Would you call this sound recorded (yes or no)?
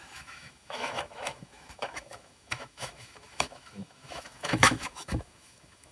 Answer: no